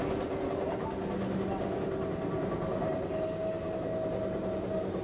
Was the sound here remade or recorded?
recorded